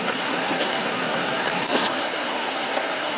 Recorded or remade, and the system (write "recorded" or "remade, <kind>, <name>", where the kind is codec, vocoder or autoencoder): remade, codec, SNAC